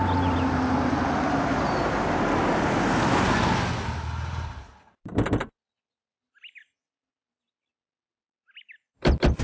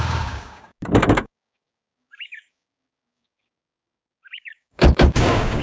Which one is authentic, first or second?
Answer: first